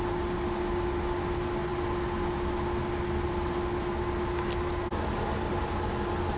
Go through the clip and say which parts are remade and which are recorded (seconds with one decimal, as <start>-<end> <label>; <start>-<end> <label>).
0.0-6.4 recorded